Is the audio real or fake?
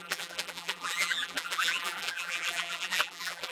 fake